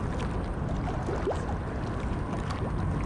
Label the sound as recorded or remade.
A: recorded